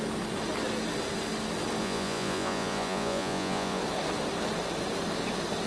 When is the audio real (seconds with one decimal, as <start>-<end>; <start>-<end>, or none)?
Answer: 0.0-1.8; 3.8-5.7